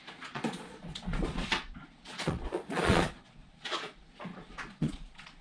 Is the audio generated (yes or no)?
yes